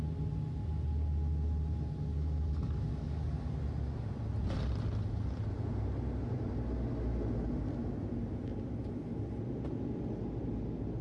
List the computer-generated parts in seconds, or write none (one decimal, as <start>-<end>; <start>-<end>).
2.1-3.2